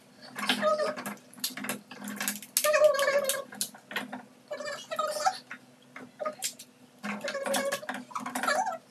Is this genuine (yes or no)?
yes